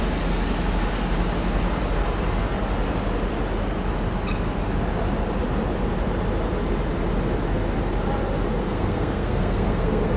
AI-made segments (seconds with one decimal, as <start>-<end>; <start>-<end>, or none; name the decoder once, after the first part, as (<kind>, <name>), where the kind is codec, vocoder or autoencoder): 8.6-10.2 (codec, SNAC)